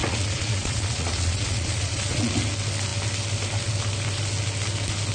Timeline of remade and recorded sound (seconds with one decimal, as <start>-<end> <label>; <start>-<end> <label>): 0.0-2.3 remade; 2.3-5.1 recorded